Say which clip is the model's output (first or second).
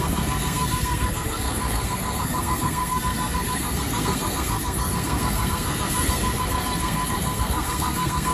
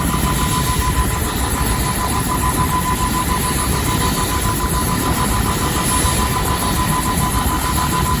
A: first